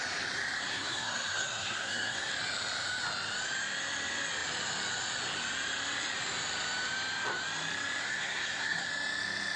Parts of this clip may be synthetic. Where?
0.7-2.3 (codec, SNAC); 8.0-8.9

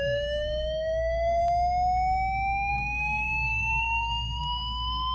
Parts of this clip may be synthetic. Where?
0.0-1.4 (codec, SNAC); 2.7-5.1

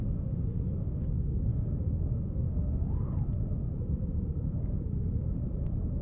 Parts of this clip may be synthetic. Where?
none

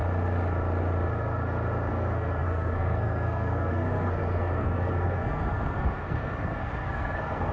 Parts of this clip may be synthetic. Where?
1.9-7.5 (codec, SNAC)

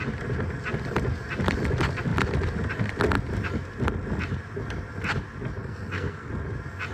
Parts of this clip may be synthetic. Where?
5.6-6.3 (codec, SNAC)

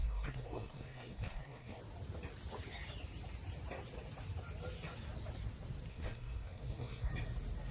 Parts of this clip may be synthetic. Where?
0.0-1.8 (codec, SNAC); 5.9-7.1

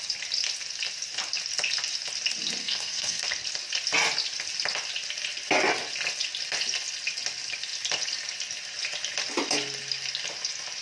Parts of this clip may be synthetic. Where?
2.6-3.2 (codec, SNAC)

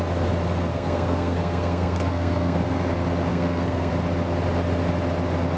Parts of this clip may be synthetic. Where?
0.7-2.8 (codec, SNAC); 3.3-3.9